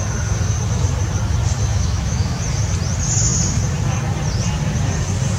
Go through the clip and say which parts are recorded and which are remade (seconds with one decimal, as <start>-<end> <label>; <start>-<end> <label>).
0.0-1.7 recorded; 1.7-2.4 remade; 2.4-5.4 recorded